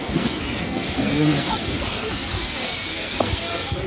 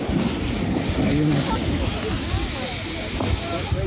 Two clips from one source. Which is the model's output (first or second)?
first